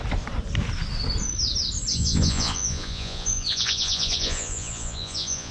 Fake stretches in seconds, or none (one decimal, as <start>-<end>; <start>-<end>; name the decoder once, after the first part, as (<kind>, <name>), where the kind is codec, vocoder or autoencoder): 1.9-5.5 (vocoder, Vocos)